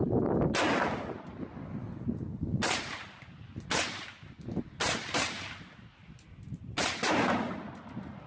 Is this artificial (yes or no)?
no